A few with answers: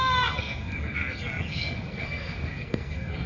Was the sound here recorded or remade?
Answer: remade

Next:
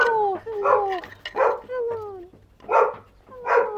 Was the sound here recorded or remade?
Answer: recorded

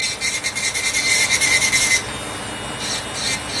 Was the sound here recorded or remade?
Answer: recorded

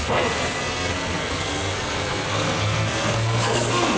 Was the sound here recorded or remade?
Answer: remade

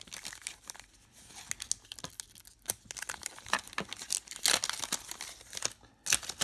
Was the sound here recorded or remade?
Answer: recorded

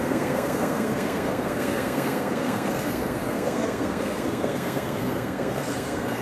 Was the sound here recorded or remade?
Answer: remade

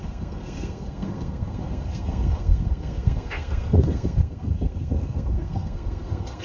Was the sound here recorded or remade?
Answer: remade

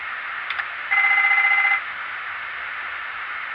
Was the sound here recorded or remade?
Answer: recorded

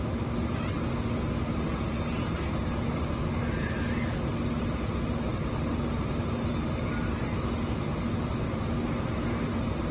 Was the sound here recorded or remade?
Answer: recorded